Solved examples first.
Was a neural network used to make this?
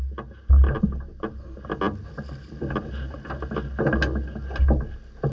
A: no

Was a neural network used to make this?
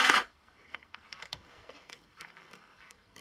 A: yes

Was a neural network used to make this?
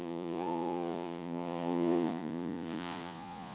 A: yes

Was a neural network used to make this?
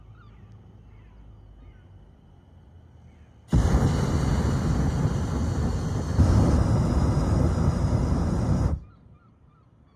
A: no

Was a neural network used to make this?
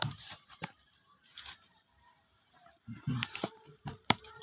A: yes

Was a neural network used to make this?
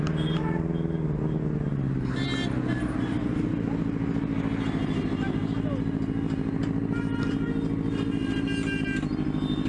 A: no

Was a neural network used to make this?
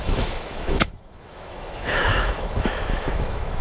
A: yes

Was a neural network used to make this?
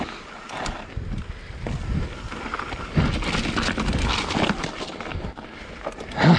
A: no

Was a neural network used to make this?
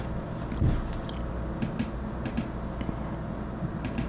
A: no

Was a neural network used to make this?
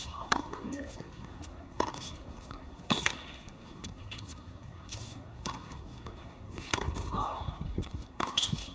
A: yes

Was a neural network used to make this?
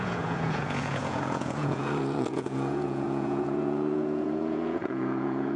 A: yes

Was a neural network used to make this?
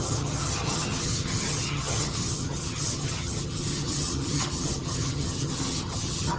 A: yes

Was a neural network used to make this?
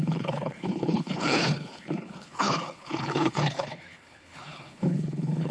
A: yes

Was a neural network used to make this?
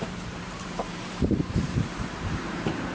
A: yes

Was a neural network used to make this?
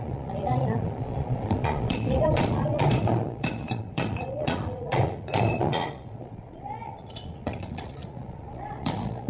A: yes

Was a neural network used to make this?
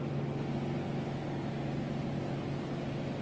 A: no